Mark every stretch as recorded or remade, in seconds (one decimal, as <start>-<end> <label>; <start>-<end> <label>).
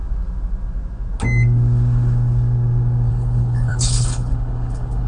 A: 0.0-3.1 recorded; 3.1-5.1 remade